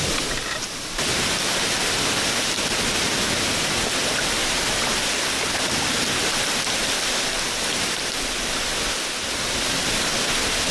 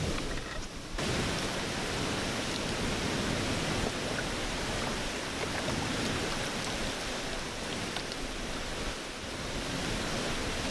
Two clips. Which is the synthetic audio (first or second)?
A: second